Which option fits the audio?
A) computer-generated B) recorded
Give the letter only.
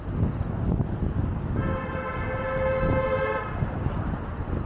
B